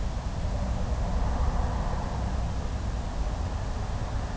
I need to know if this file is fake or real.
real